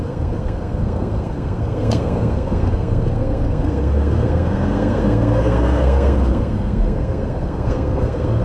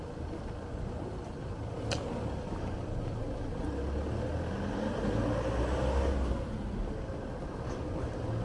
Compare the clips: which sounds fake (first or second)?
first